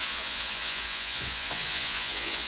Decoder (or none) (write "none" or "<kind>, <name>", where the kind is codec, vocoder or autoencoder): vocoder, Vocos